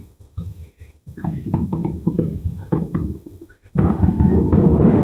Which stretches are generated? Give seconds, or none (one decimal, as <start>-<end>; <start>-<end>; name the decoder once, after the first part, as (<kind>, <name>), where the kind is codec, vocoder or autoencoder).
0.0-5.0 (autoencoder, DAC-VAE)